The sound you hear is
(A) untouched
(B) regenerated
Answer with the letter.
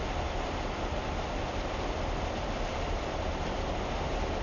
A